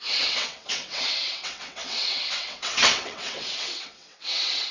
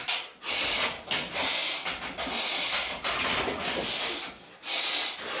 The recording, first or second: second